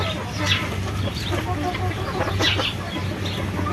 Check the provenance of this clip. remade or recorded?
recorded